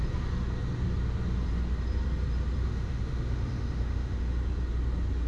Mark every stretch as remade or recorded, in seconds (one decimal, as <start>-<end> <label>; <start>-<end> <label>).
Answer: 0.0-2.6 recorded; 2.6-4.2 remade; 4.2-5.3 recorded